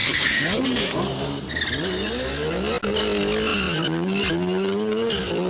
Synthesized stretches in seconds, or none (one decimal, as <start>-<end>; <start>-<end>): 0.0-0.6